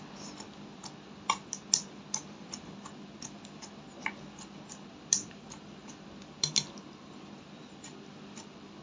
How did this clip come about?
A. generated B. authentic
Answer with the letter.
B